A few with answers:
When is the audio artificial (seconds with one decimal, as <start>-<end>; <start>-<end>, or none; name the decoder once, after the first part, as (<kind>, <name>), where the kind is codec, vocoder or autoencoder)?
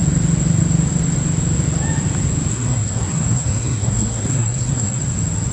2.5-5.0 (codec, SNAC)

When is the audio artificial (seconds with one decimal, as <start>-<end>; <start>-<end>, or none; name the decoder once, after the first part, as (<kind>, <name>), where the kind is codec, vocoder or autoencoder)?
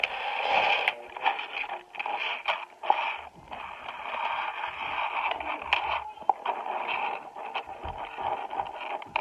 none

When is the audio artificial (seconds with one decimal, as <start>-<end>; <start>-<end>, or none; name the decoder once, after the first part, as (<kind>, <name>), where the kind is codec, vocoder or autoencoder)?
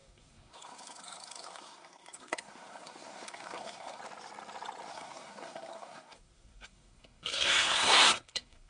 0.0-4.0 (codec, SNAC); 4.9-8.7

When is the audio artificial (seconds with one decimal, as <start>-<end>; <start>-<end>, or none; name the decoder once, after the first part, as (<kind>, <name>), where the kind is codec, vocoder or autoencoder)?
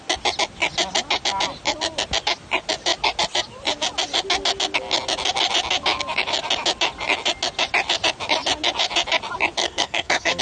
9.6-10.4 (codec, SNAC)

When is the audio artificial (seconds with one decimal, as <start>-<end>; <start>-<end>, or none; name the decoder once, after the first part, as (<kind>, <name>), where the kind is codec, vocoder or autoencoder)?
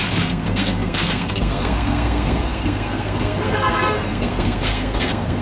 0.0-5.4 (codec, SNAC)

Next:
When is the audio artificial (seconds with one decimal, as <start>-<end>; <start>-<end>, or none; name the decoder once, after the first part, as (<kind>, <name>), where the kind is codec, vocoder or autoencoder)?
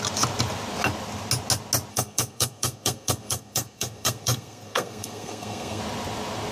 1.9-5.8 (codec, SNAC)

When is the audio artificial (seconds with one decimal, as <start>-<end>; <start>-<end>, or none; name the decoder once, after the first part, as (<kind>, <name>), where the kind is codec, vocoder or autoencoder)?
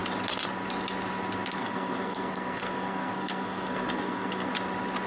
1.6-4.5 (codec, SNAC)